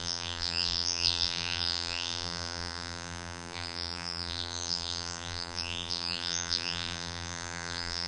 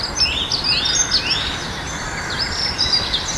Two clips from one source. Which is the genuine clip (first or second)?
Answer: second